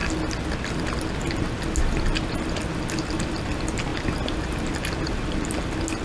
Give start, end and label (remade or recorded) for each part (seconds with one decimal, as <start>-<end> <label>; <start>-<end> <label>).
0.0-6.0 recorded